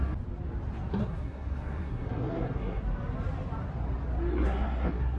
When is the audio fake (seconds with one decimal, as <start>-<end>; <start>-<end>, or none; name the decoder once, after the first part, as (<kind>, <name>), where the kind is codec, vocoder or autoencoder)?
0.9-2.8 (codec, SNAC); 4.3-5.2